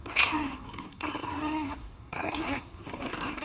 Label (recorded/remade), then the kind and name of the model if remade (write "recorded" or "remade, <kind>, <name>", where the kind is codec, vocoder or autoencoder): remade, codec, SNAC